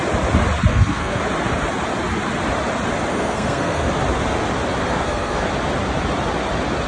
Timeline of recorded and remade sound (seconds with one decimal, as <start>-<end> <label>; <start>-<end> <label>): 0.0-0.7 recorded; 0.7-1.2 remade; 1.2-3.1 recorded; 3.1-3.9 remade; 3.9-4.8 recorded; 4.8-5.5 remade; 5.5-6.9 recorded